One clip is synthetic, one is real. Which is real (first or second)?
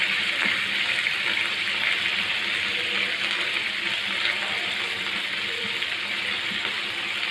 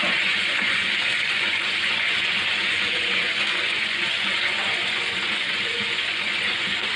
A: first